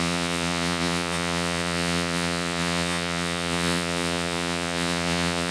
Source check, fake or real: fake